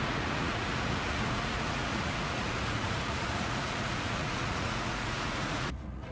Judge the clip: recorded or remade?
remade